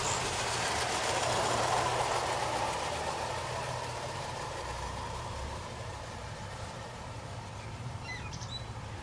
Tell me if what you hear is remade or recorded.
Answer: remade